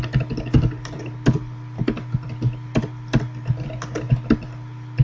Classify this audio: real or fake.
real